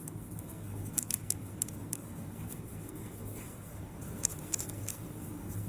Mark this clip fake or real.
fake